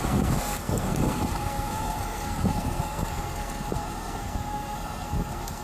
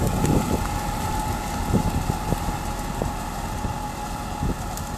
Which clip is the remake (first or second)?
first